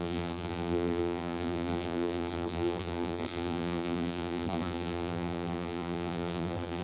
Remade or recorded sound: remade